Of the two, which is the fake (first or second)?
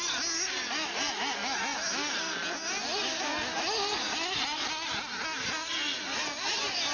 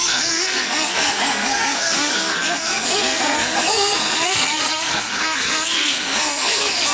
second